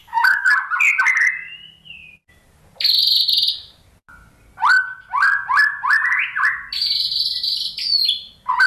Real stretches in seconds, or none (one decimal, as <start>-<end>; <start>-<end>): 0.5-8.7